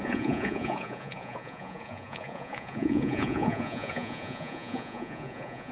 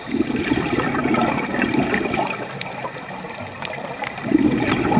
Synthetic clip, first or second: first